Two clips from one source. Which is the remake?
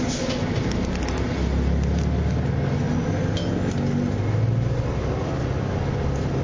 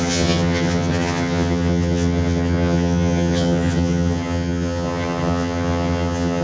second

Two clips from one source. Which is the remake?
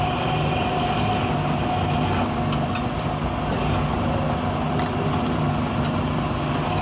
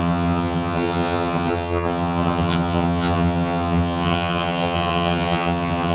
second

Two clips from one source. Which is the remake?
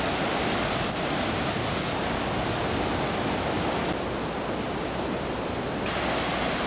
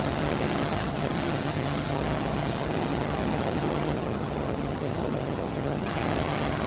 second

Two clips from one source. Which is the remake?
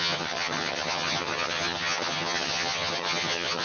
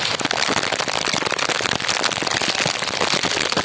first